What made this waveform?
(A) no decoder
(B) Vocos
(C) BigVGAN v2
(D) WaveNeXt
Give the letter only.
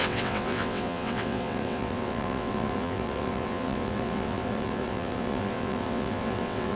D